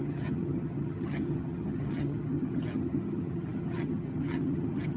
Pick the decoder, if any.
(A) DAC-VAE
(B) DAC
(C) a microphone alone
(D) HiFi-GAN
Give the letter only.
D